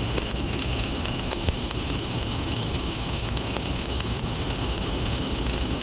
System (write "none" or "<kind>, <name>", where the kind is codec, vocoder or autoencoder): autoencoder, DAC-VAE